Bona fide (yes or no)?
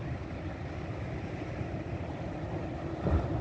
no